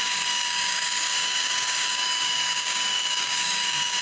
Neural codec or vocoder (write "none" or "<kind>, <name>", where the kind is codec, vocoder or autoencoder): codec, DAC